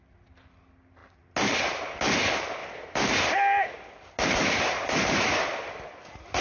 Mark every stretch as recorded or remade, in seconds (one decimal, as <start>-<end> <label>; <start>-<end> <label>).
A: 0.0-6.4 recorded